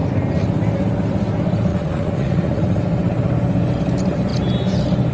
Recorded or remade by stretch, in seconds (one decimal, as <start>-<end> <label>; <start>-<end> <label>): 0.0-1.7 recorded; 1.7-2.8 remade; 2.8-5.1 recorded